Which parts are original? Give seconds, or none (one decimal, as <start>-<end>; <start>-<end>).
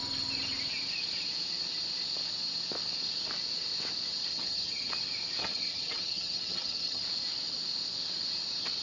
0.0-4.3; 4.9-5.4; 7.0-8.8